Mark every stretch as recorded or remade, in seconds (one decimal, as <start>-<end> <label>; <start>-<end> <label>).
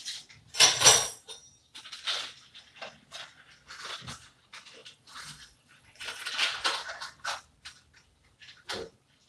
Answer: 0.0-0.8 recorded; 0.8-1.3 remade; 1.3-4.8 recorded; 4.8-6.3 remade; 6.3-9.3 recorded